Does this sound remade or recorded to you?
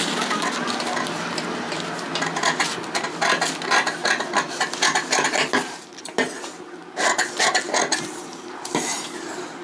recorded